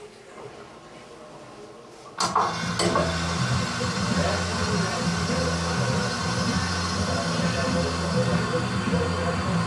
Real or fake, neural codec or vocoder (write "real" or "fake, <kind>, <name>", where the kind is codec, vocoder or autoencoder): real